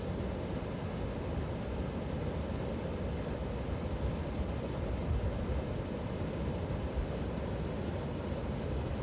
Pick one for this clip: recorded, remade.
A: recorded